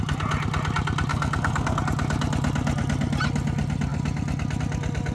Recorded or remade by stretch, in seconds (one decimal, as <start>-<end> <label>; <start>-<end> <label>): 0.0-1.1 recorded; 1.1-1.8 remade; 1.8-5.1 recorded